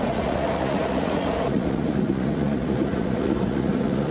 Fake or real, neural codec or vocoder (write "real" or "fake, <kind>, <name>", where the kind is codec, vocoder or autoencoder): fake, vocoder, Vocos